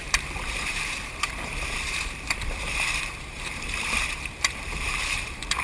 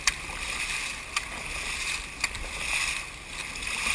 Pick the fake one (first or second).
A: first